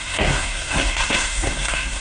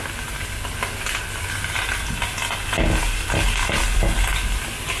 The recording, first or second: second